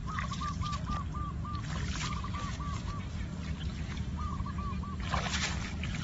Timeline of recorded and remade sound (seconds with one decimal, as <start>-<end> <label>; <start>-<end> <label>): 0.0-6.0 recorded